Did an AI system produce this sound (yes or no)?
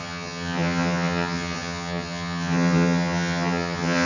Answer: yes